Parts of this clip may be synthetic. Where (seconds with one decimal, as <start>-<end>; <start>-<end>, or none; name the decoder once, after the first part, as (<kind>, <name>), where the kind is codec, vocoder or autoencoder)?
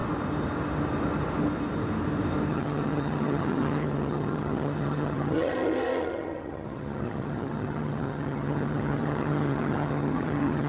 2.5-10.7 (vocoder, HiFi-GAN)